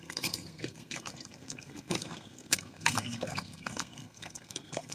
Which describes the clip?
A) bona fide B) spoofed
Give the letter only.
B